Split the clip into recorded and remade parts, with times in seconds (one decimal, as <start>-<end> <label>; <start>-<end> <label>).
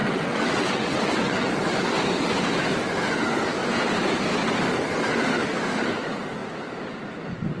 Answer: 0.0-1.5 remade; 1.5-7.6 recorded